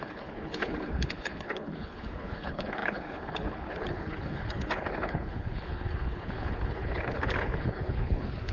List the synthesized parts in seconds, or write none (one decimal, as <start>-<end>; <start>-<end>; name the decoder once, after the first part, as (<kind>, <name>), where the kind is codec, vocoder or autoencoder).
0.0-8.5 (codec, HILCodec)